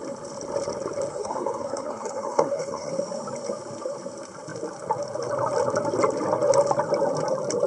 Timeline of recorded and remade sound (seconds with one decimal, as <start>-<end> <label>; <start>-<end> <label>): 0.0-1.1 recorded; 1.1-2.9 remade; 2.9-7.7 recorded